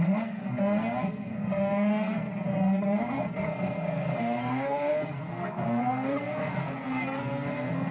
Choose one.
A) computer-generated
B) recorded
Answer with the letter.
A